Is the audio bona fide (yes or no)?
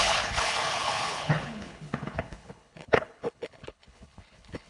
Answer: no